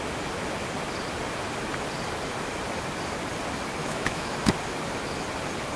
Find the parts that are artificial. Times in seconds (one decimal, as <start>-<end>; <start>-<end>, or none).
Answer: 3.8-4.5